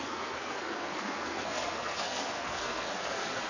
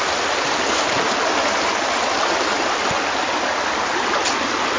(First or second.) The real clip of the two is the second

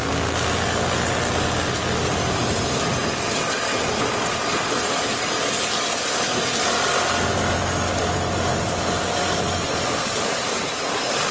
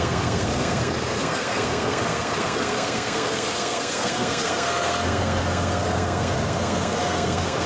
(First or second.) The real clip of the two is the first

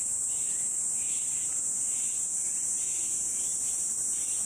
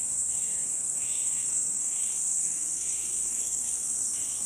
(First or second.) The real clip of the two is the first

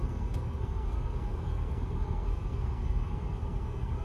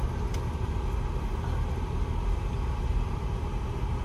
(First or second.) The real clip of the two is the second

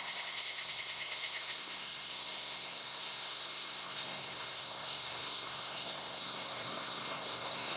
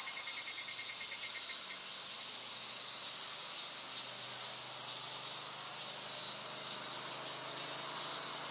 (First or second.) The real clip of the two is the second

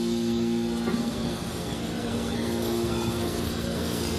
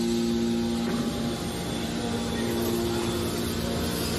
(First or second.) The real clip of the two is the second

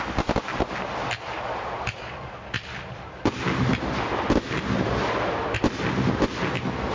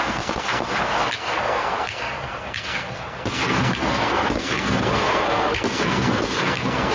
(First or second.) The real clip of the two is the first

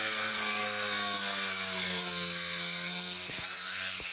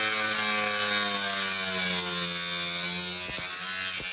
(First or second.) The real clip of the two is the second